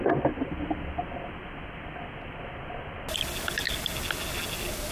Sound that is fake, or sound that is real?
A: real